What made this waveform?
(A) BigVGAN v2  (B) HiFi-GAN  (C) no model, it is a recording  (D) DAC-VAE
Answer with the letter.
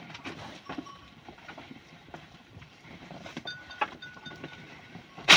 A